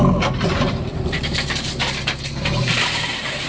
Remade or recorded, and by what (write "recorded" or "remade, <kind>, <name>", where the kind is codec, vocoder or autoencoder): remade, vocoder, BigVGAN v2